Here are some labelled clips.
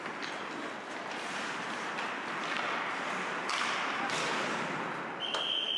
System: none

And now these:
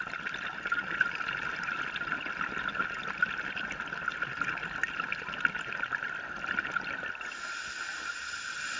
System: none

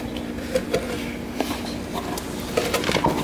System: none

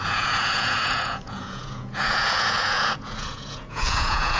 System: vocoder, Vocos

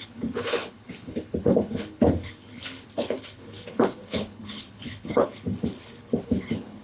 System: codec, HILCodec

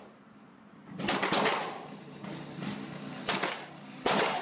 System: none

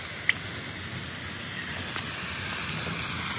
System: none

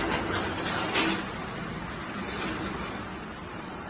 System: none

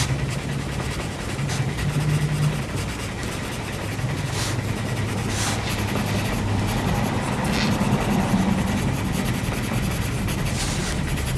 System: none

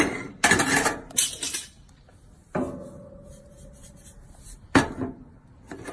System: none